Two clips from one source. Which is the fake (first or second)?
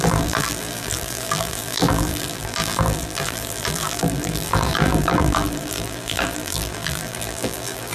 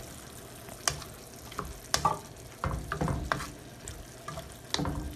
first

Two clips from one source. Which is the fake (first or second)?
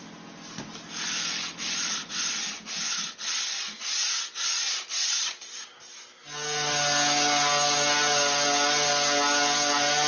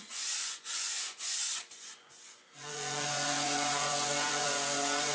second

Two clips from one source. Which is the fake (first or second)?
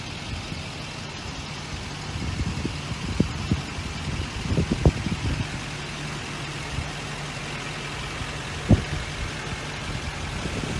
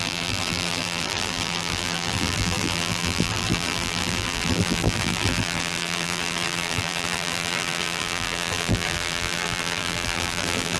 second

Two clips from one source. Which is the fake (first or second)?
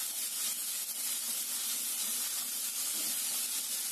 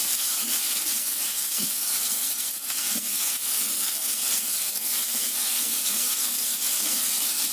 second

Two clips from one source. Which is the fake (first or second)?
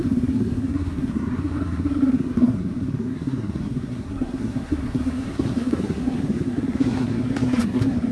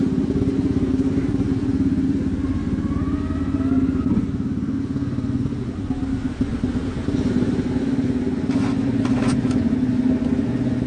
first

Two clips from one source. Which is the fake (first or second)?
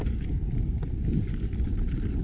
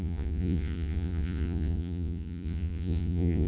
second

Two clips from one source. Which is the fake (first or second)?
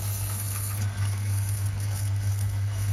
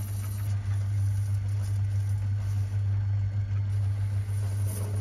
first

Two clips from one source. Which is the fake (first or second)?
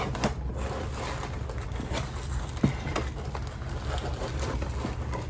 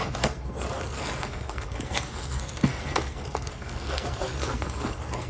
second